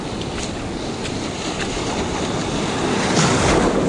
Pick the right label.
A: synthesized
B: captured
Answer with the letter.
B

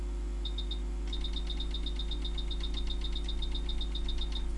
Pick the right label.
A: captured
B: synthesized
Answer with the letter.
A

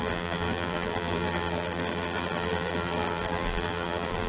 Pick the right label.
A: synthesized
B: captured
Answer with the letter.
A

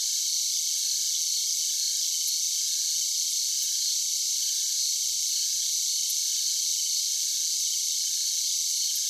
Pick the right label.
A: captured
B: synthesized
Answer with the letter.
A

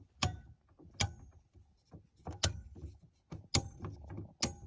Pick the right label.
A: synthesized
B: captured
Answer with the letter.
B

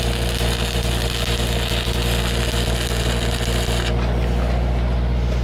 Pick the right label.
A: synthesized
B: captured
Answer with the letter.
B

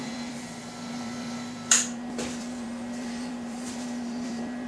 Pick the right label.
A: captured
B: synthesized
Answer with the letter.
B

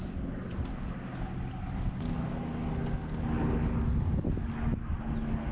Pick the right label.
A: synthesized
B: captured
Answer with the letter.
B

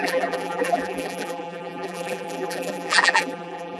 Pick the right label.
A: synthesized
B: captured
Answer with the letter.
A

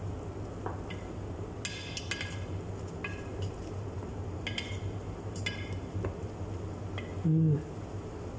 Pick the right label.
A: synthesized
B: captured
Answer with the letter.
B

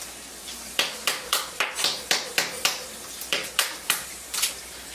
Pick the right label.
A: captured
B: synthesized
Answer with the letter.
B